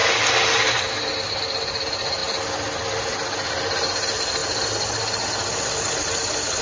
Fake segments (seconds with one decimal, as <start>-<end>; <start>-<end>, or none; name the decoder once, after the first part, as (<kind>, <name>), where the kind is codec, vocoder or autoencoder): none